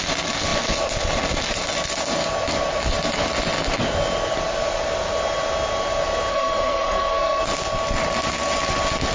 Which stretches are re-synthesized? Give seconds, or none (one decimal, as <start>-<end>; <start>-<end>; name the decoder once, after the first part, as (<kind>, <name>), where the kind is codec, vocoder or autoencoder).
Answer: 6.3-7.4 (codec, SNAC)